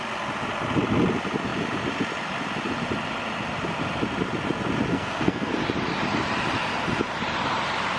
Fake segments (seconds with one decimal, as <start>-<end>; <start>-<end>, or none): 4.9-5.5